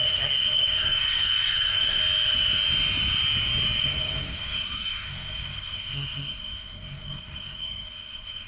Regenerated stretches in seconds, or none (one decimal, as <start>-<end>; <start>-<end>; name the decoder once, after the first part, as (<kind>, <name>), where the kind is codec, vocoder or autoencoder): 0.0-2.0 (codec, SNAC); 3.8-8.5